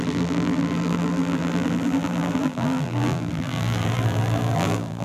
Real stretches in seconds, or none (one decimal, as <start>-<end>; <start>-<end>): none